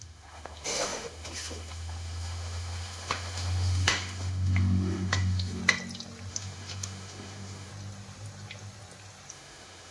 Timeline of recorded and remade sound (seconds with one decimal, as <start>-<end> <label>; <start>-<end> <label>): 0.0-5.6 remade; 5.6-6.3 recorded; 6.3-7.7 remade; 7.7-9.3 recorded; 9.3-9.9 remade